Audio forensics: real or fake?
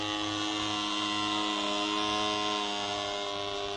real